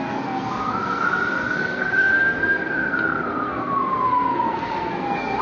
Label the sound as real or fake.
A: fake